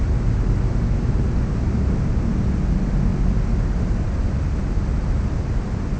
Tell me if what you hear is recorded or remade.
recorded